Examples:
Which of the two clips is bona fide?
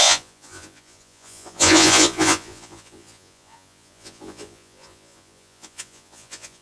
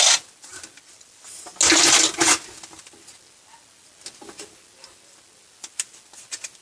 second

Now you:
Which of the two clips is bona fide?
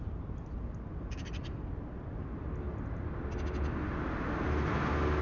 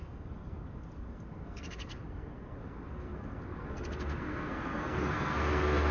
first